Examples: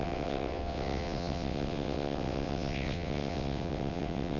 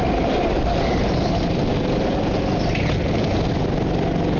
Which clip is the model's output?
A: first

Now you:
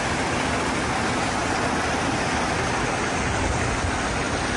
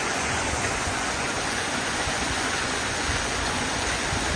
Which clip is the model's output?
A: second